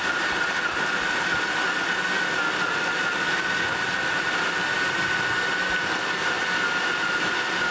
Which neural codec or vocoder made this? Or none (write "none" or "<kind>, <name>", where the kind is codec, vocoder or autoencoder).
none